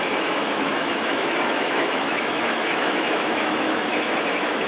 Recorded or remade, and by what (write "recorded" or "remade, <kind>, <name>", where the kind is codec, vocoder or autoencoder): remade, autoencoder, DAC-VAE